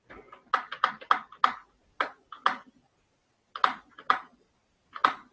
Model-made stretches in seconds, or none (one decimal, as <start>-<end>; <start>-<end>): none